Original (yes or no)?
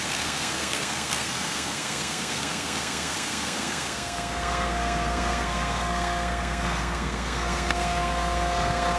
no